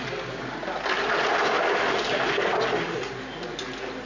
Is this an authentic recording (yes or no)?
yes